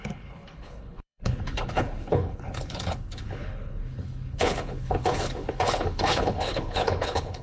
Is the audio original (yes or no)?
no